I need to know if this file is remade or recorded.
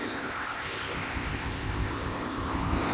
remade